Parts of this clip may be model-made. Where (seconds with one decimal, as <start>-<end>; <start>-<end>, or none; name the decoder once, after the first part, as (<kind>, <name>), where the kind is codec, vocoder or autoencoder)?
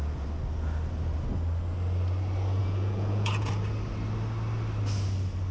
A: 2.6-3.5 (vocoder, Vocos)